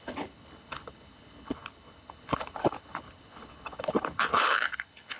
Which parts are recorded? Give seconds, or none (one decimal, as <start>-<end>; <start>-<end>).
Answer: none

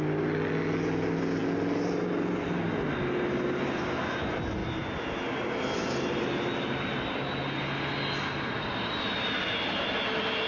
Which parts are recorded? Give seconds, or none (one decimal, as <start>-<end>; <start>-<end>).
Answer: 0.0-10.5

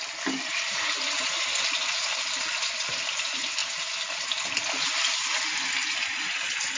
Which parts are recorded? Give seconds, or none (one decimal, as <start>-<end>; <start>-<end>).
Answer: 0.0-6.8

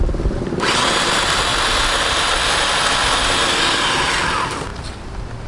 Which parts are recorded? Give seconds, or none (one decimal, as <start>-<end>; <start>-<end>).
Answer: 0.0-5.5

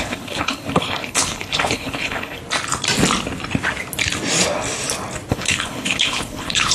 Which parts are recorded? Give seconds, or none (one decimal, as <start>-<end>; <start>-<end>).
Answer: 2.4-5.3